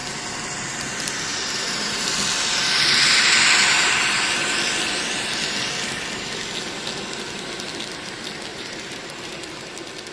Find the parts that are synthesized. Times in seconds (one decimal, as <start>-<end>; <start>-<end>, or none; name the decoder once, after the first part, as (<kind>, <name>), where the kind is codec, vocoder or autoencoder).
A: 1.3-2.0 (vocoder, BigVGAN v2); 8.5-9.3